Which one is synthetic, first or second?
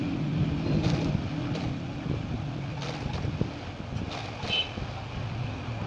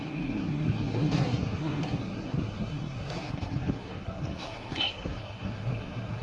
second